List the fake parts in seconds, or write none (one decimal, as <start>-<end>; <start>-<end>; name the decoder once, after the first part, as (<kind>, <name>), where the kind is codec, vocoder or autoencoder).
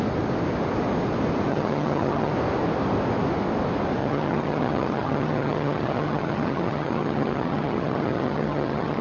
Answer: 1.5-2.3 (vocoder, HiFi-GAN); 4.0-9.0